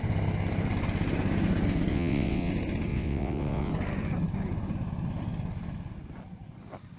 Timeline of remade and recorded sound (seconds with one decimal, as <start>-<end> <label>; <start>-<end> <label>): 0.0-1.9 recorded; 1.9-2.5 remade; 2.5-2.9 recorded; 2.9-3.7 remade; 3.7-7.0 recorded